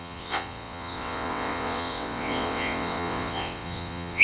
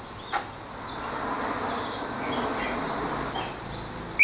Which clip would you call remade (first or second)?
first